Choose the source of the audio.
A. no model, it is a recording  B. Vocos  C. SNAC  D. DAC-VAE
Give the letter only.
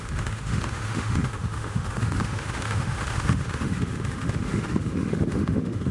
D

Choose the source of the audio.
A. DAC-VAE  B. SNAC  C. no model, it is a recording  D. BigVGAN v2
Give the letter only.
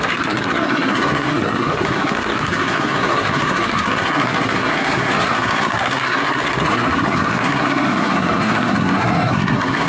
B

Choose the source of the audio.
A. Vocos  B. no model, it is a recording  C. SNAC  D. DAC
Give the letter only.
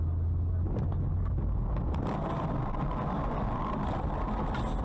B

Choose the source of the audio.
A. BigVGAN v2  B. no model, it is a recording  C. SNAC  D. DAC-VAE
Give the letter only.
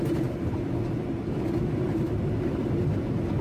B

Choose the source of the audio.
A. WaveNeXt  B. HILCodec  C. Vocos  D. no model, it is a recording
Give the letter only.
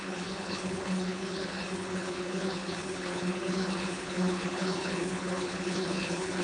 B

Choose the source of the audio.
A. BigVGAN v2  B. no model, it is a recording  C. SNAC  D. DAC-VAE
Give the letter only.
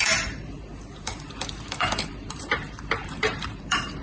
A